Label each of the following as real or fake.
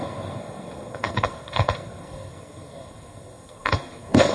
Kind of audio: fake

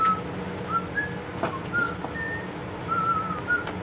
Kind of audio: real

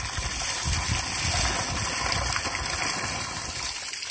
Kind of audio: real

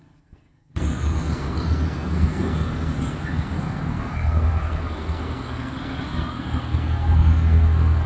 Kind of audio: fake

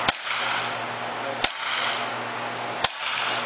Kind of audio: real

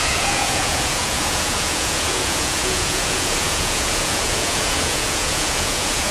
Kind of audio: fake